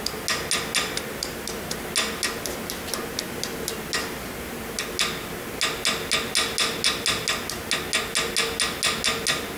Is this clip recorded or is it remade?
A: recorded